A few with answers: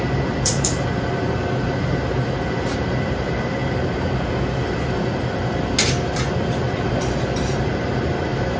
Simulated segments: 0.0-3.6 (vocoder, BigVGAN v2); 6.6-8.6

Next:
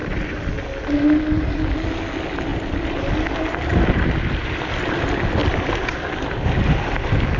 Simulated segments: 0.0-0.5 (vocoder, BigVGAN v2); 2.5-4.9; 5.4-7.4

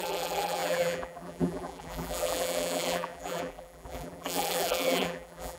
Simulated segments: 0.0-5.6 (vocoder, BigVGAN v2)

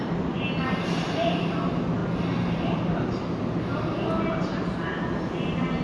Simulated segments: none

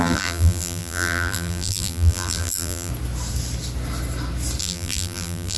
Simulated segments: 0.0-2.9 (vocoder, BigVGAN v2); 4.6-5.6